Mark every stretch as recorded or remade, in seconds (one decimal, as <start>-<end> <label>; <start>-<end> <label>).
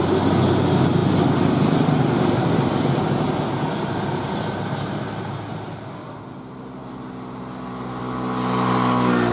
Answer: 0.0-9.3 recorded